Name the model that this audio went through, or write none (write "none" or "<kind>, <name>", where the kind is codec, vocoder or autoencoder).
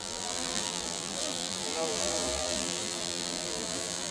vocoder, BigVGAN v2